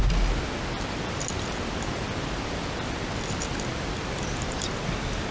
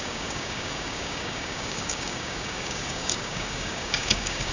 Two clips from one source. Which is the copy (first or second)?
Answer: second